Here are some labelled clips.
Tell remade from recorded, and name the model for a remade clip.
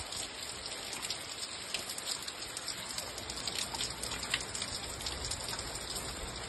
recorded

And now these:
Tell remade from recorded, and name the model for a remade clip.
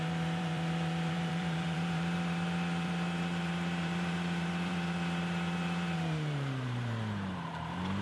remade, vocoder, BigVGAN v2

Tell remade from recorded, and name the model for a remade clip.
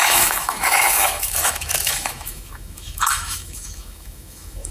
remade, autoencoder, DAC-VAE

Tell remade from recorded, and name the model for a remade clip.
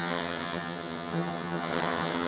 remade, vocoder, HiFi-GAN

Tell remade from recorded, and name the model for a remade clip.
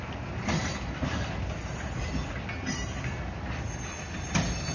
recorded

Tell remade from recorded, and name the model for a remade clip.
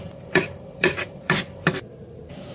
remade, vocoder, BigVGAN v2